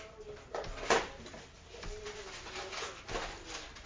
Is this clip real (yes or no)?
yes